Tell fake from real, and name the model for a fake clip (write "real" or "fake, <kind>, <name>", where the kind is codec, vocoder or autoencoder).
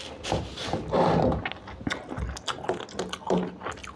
real